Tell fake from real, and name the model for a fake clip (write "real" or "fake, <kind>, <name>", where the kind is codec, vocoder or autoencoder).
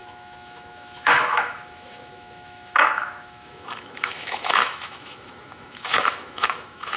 fake, autoencoder, DAC-VAE